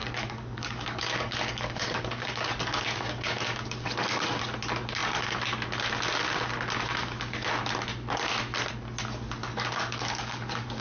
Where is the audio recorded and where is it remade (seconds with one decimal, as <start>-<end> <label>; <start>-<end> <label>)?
0.0-4.4 remade; 4.4-9.4 recorded; 9.4-10.8 remade